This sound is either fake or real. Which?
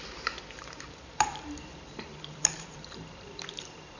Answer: fake